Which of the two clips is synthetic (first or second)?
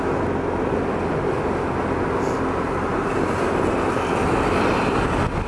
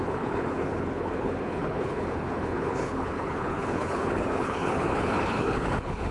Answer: second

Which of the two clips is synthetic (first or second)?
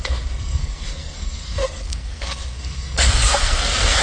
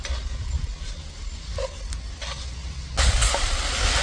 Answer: first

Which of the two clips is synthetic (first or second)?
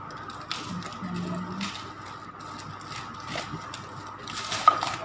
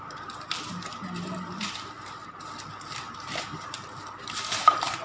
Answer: second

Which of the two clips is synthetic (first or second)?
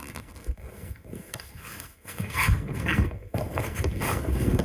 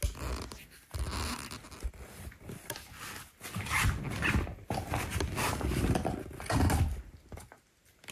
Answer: first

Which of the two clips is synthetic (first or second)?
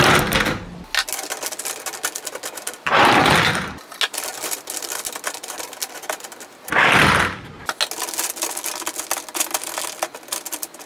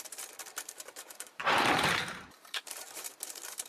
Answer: second